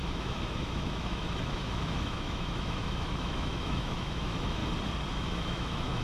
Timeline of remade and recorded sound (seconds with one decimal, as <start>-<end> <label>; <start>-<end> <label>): 0.0-4.6 remade; 4.6-5.1 recorded; 5.1-6.0 remade